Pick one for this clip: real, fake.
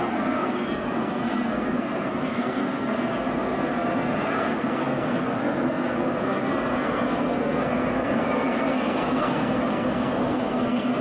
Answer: fake